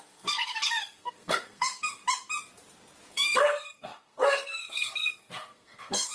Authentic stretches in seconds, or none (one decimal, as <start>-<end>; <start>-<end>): 2.0-3.1